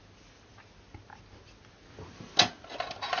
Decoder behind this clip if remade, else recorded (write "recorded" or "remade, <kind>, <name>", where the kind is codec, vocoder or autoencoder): recorded